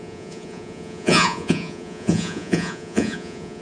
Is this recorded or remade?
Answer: remade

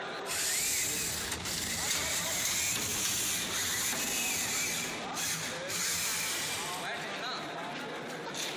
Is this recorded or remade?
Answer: recorded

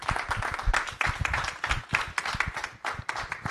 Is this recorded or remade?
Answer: recorded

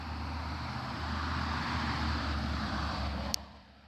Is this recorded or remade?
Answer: remade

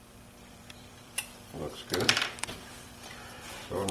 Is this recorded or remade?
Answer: remade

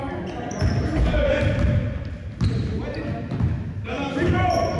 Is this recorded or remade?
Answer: recorded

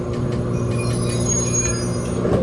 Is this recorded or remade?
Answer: recorded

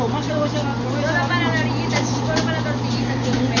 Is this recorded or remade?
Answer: recorded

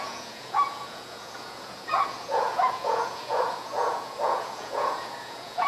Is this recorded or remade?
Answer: remade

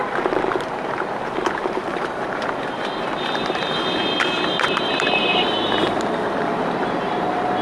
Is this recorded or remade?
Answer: remade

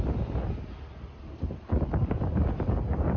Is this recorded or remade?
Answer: recorded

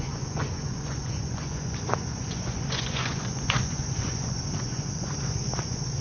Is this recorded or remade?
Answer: remade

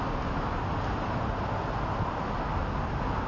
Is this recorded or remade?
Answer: recorded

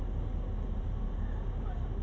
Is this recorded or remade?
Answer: recorded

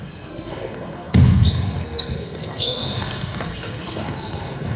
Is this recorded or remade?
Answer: remade